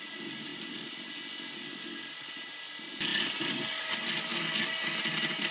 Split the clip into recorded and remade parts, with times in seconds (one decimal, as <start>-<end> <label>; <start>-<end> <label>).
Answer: 0.0-5.5 recorded